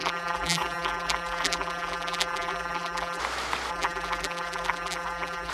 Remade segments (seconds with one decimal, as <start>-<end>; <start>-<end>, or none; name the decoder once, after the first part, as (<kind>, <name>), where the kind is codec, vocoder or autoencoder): 0.0-3.2 (vocoder, BigVGAN v2); 3.7-5.5